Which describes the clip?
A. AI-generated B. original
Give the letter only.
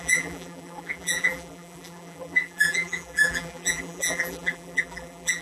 A